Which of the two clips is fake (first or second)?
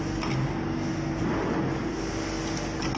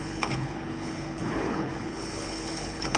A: second